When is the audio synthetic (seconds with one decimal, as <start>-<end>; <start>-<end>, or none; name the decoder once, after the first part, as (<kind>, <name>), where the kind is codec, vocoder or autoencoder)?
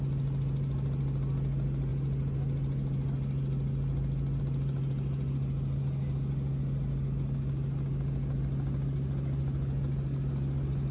none